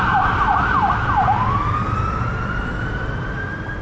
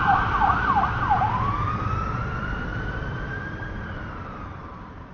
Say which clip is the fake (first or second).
second